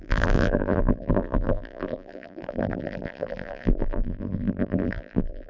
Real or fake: fake